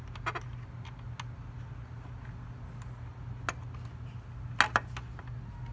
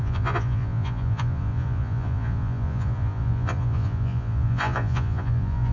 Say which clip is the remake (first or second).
second